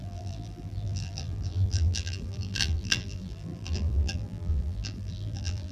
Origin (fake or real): fake